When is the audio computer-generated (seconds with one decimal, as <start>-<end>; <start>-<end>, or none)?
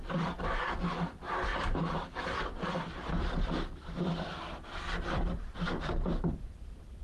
0.0-7.0